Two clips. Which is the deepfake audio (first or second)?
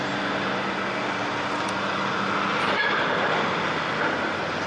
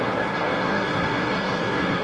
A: second